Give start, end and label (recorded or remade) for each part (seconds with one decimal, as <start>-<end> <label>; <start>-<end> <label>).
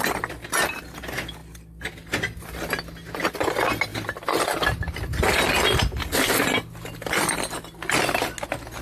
0.0-8.8 recorded